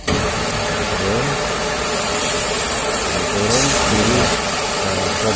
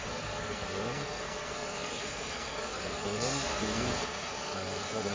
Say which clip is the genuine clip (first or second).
first